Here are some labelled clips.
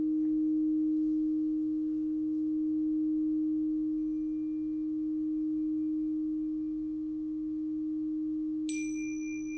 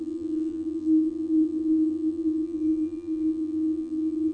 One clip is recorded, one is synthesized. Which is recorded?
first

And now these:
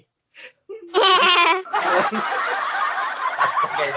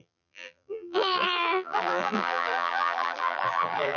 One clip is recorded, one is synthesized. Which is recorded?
first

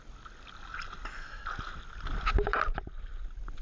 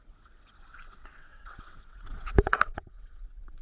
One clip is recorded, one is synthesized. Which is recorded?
first